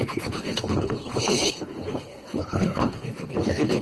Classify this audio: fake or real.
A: fake